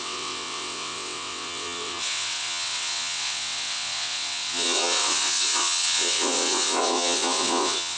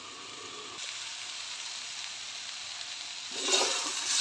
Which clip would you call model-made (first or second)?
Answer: first